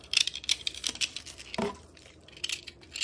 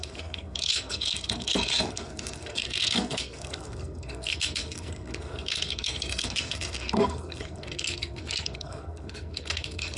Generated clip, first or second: second